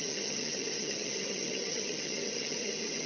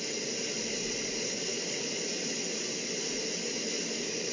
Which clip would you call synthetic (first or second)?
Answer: first